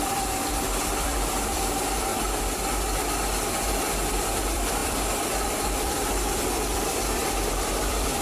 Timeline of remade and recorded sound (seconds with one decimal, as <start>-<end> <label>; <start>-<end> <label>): 0.0-2.1 remade; 2.1-4.2 recorded; 4.2-7.2 remade; 7.2-7.7 recorded; 7.7-8.2 remade